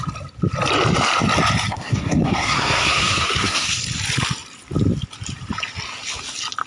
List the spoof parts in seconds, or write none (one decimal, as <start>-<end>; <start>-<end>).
1.7-3.8